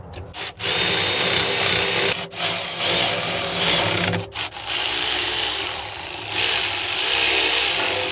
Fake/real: real